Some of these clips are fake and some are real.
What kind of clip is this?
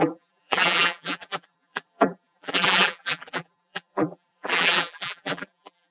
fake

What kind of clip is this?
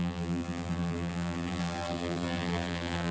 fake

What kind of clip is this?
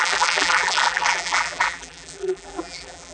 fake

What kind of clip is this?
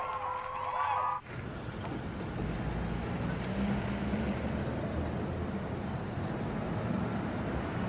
real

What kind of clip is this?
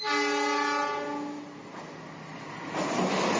real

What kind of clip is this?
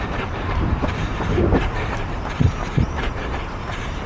fake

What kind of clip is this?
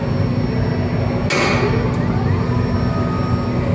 real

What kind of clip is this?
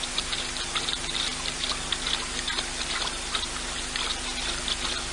real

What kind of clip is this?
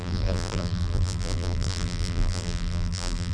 fake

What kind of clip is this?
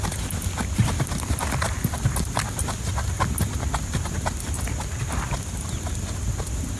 fake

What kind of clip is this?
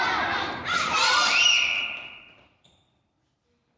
fake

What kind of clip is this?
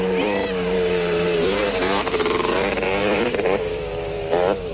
fake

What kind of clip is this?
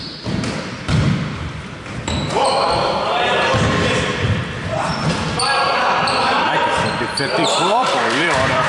fake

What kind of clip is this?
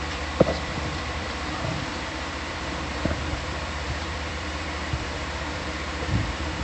fake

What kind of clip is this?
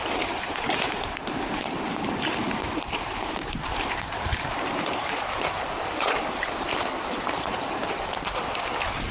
fake